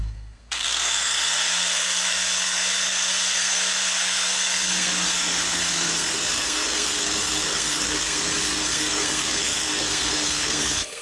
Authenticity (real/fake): fake